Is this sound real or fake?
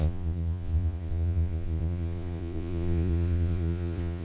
fake